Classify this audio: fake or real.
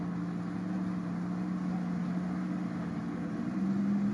real